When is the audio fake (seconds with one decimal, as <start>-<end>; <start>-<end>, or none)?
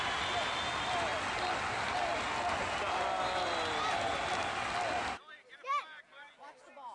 none